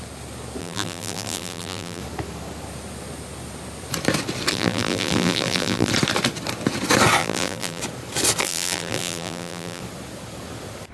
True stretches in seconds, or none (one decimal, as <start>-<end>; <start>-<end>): 0.0-0.6; 2.0-4.5; 5.9-7.2; 7.8-8.4; 9.8-10.9